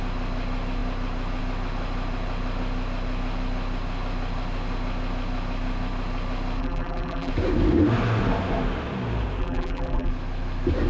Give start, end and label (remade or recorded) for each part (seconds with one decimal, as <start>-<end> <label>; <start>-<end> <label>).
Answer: 0.0-6.6 recorded; 6.6-7.3 remade; 7.3-9.4 recorded; 9.4-10.1 remade; 10.1-10.9 recorded

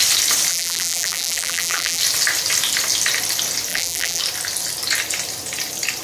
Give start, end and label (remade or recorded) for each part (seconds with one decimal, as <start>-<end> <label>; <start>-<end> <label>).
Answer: 0.0-0.5 recorded; 0.5-2.0 remade; 2.0-3.7 recorded; 3.7-4.2 remade; 4.2-6.0 recorded

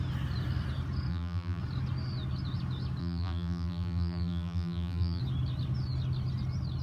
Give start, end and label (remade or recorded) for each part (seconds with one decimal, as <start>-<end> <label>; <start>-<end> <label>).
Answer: 0.0-1.1 recorded; 1.1-1.6 remade; 1.6-3.0 recorded; 3.0-5.2 remade; 5.2-6.8 recorded

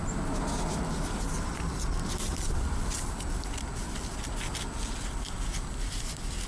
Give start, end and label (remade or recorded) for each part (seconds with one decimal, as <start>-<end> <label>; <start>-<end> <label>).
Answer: 0.0-6.5 recorded

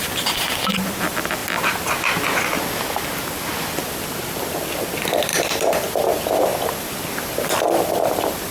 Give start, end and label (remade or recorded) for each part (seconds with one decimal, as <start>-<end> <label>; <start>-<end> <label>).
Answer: 0.0-1.4 remade; 1.4-3.8 recorded; 3.8-8.5 remade

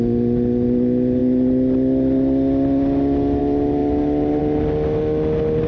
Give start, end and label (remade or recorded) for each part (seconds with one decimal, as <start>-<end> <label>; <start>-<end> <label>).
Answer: 0.0-5.7 recorded

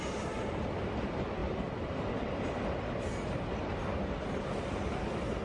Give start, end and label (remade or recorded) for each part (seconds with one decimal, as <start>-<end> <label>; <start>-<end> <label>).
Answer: 0.0-5.4 recorded